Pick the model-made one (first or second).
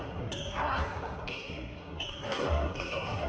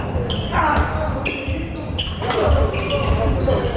first